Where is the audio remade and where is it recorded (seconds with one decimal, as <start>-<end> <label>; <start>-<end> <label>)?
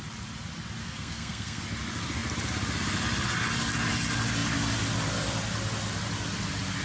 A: 0.0-0.8 recorded; 0.8-1.6 remade; 1.6-6.8 recorded